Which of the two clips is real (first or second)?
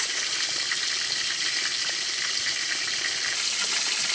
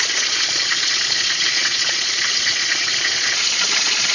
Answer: first